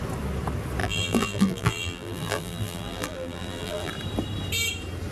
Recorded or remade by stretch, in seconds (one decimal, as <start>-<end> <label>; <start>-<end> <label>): 0.0-0.8 recorded; 0.8-3.9 remade; 3.9-5.1 recorded